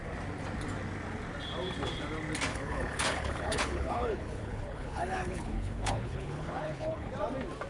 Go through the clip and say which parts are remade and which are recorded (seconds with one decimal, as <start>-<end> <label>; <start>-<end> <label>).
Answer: 0.0-2.5 recorded; 2.5-7.1 remade; 7.1-7.7 recorded

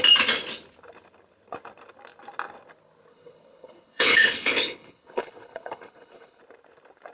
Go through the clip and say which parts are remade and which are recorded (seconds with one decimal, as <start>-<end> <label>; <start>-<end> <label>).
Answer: 0.0-3.1 recorded; 3.1-6.4 remade; 6.4-7.1 recorded

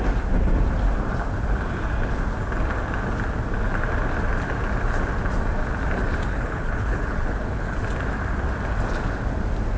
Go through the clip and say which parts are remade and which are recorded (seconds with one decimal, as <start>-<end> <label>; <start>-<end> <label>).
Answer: 0.0-6.3 recorded; 6.3-7.8 remade; 7.8-9.8 recorded

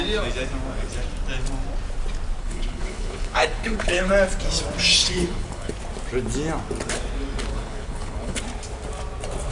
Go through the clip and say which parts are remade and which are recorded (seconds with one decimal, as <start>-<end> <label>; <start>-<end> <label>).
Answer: 0.0-2.4 recorded; 2.4-4.1 remade; 4.1-5.0 recorded; 5.0-5.7 remade; 5.7-7.5 recorded; 7.5-8.4 remade; 8.4-9.5 recorded

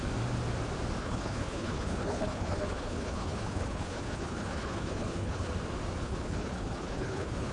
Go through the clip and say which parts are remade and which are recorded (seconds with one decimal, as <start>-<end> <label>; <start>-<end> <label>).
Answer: 0.0-1.0 recorded; 1.0-5.5 remade; 5.5-6.0 recorded; 6.0-7.5 remade

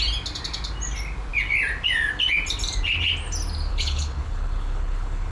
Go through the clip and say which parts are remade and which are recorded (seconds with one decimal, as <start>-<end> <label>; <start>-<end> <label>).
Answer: 0.0-3.7 recorded; 3.7-5.3 remade